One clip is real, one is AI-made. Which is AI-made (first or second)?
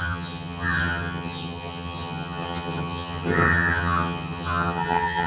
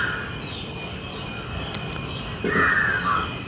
first